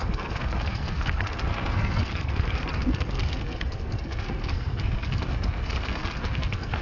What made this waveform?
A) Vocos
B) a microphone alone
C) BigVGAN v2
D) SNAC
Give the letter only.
D